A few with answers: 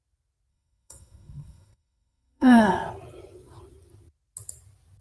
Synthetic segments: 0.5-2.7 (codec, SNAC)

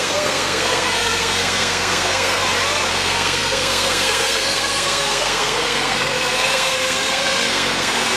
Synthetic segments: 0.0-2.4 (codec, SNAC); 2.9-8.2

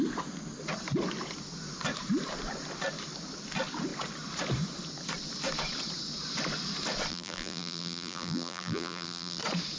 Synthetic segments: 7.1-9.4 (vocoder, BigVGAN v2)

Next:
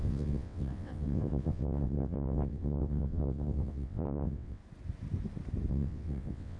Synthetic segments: 0.0-4.6 (vocoder, WaveNeXt); 5.7-6.6